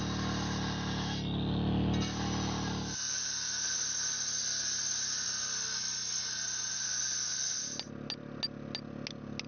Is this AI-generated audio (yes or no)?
no